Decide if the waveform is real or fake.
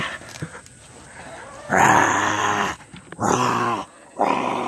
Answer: fake